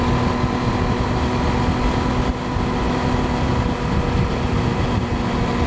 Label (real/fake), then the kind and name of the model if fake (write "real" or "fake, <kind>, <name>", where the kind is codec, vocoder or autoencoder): real